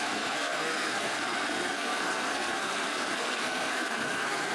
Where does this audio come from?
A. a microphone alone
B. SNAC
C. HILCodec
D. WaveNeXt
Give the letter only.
B